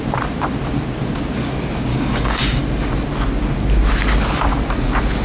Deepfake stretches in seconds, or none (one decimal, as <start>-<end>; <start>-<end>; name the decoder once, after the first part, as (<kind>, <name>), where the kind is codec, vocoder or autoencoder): 1.9-2.6 (codec, DAC)